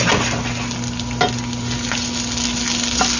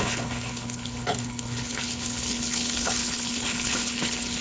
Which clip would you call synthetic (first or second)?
second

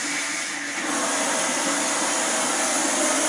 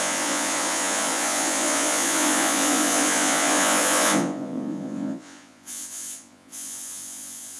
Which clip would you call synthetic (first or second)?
second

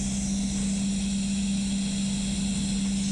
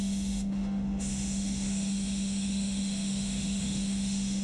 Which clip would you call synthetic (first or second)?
second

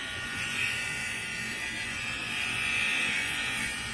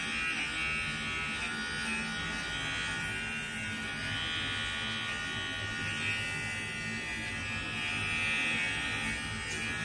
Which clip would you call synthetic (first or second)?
first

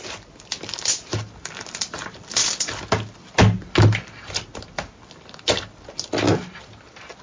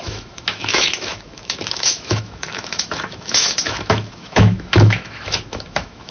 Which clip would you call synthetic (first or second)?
second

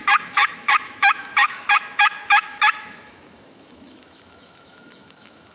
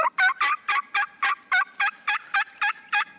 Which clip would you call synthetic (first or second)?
first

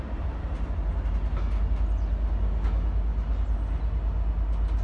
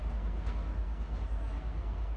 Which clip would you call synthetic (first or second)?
second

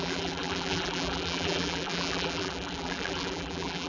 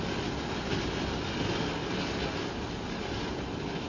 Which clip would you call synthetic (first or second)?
first